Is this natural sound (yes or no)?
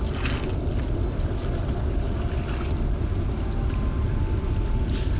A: yes